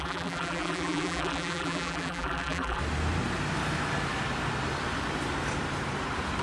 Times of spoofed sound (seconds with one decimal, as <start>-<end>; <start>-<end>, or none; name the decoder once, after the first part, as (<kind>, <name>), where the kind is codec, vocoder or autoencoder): 0.0-2.8 (vocoder, BigVGAN v2)